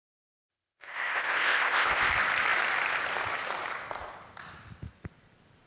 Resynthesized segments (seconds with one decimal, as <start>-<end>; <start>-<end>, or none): 0.5-2.1